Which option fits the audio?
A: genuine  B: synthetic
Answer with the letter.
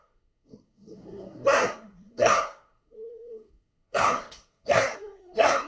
B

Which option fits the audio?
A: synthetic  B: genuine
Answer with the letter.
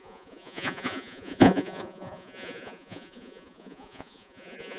A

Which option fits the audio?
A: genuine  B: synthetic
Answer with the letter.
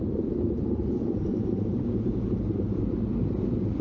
B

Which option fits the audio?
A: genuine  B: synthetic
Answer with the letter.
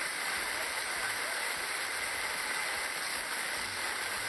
A